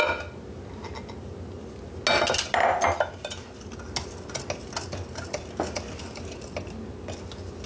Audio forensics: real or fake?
real